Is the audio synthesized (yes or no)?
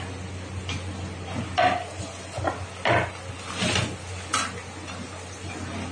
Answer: no